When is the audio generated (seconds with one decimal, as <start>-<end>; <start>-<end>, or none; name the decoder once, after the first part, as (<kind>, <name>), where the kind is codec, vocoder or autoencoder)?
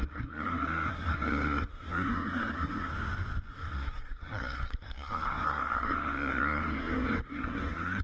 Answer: 0.0-2.9 (codec, SNAC); 3.5-8.0